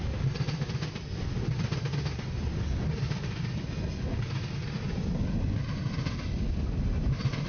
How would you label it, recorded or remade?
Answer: remade